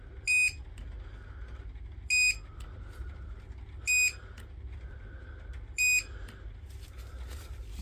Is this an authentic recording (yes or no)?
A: yes